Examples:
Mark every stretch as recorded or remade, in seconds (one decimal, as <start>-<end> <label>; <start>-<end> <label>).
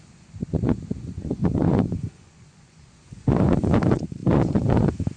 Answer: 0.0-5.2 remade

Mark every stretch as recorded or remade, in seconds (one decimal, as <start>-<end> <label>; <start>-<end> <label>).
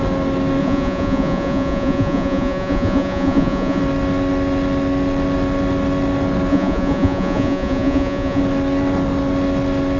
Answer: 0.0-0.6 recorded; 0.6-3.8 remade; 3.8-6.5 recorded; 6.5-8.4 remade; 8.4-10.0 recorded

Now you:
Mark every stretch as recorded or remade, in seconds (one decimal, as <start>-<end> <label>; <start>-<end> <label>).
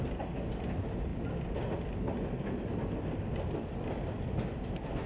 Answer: 0.0-5.1 recorded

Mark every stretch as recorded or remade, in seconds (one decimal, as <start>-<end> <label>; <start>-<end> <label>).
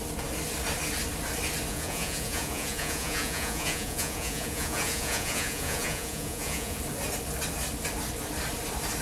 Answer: 0.0-1.7 recorded; 1.7-6.8 remade; 6.8-9.0 recorded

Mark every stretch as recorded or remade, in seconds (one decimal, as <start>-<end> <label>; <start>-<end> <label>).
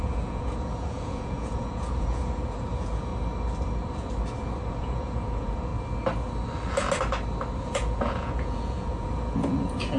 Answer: 0.0-3.1 remade; 3.1-4.7 recorded; 4.7-5.7 remade; 5.7-7.6 recorded; 7.6-10.0 remade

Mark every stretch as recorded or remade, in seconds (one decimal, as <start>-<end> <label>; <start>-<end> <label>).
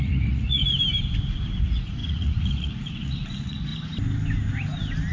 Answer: 0.0-0.6 remade; 0.6-1.6 recorded; 1.6-3.7 remade; 3.7-5.1 recorded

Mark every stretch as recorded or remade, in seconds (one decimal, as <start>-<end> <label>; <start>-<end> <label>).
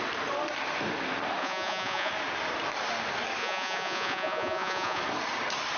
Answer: 0.0-1.4 recorded; 1.4-2.1 remade; 2.1-3.4 recorded; 3.4-5.0 remade; 5.0-5.8 recorded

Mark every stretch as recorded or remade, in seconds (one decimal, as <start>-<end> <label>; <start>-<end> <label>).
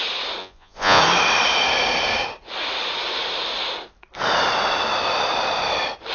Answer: 0.0-0.4 recorded; 0.4-1.0 remade; 1.0-6.1 recorded